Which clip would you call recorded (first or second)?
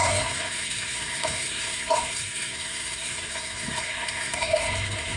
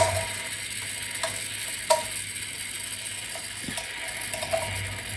second